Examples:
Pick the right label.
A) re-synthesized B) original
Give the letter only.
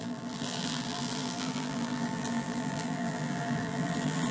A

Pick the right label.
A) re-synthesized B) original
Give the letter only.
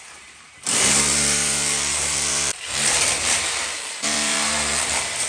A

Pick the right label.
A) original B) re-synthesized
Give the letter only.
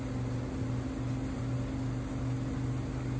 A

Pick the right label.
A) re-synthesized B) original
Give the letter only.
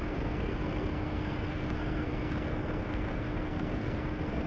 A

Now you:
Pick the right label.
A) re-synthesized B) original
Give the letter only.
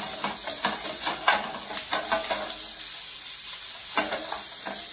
B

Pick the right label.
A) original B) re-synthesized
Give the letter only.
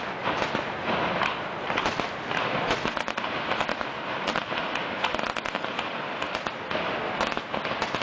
A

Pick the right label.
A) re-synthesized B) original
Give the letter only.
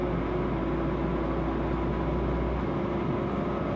B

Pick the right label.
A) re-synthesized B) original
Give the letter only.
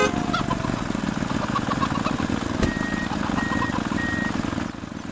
B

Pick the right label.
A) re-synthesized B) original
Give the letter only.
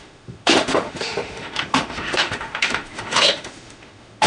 A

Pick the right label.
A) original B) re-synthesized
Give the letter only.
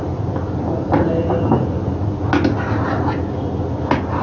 A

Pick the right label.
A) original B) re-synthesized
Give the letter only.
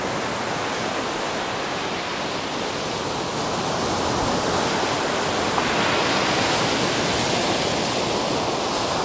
A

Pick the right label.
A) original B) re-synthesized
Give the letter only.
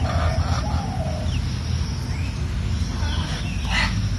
A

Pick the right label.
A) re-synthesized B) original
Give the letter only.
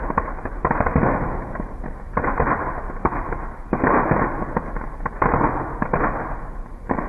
B